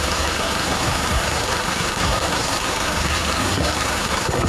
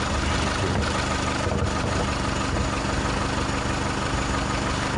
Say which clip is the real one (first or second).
second